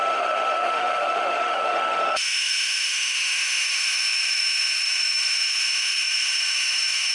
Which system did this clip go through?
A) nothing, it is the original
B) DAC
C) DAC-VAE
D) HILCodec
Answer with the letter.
C